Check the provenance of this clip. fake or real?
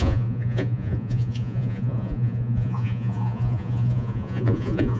fake